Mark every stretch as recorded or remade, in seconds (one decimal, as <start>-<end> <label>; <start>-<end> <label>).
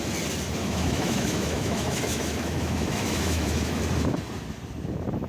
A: 0.0-0.6 recorded; 0.6-3.8 remade; 3.8-5.3 recorded